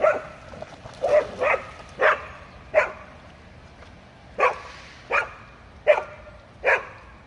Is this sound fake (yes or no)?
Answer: no